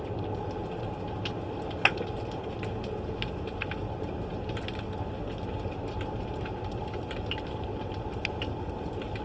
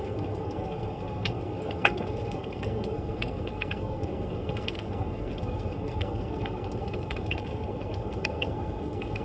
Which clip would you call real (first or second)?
first